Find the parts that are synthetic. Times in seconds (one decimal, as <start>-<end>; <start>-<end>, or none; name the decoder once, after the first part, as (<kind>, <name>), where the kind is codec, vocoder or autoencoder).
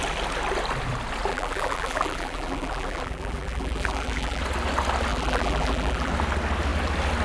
1.3-4.4 (vocoder, BigVGAN v2); 5.1-6.1